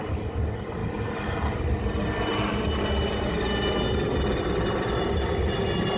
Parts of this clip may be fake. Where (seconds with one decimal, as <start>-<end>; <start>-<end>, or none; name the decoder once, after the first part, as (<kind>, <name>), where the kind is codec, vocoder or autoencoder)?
none